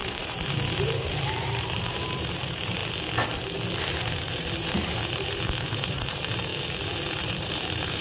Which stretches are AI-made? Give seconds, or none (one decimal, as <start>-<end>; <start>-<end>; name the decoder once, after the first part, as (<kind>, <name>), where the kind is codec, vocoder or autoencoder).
0.0-2.8 (vocoder, BigVGAN v2); 3.8-6.5; 7.1-8.0